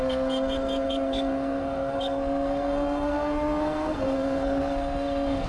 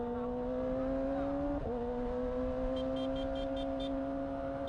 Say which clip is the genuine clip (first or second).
second